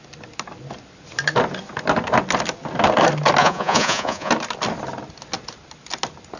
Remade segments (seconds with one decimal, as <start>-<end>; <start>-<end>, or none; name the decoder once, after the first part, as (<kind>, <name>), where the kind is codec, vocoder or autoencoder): 3.4-4.3 (vocoder, Vocos)